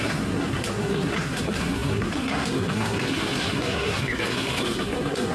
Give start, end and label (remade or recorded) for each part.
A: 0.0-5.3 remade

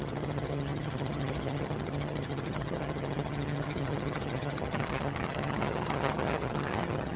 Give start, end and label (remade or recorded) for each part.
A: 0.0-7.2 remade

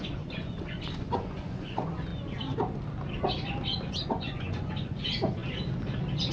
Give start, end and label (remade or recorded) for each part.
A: 0.0-2.1 remade; 2.1-3.9 recorded; 3.9-5.4 remade; 5.4-6.3 recorded

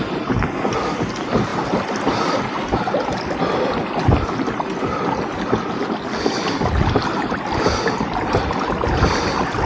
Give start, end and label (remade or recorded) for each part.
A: 0.0-9.7 recorded

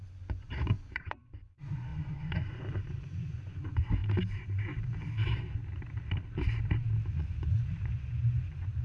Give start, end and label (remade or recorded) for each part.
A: 0.0-4.0 remade; 4.0-7.1 recorded; 7.1-8.8 remade

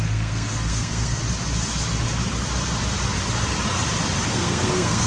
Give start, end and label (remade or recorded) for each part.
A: 0.0-1.2 remade; 1.2-4.3 recorded; 4.3-5.1 remade